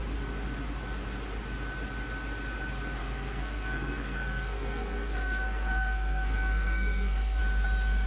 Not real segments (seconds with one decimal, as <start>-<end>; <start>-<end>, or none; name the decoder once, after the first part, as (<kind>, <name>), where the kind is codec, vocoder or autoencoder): 3.0-7.4 (codec, SNAC)